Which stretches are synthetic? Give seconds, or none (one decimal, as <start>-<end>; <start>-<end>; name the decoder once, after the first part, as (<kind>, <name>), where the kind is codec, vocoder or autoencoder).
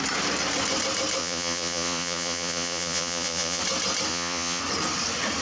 1.2-3.6 (vocoder, Vocos); 4.1-4.6